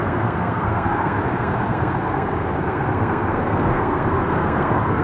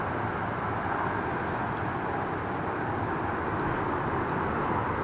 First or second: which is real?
second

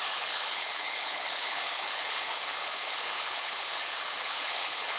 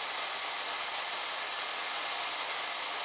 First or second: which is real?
second